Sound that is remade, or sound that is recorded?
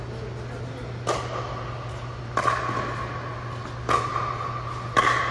recorded